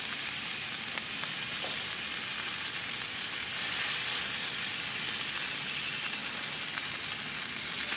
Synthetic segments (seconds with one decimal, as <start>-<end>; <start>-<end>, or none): none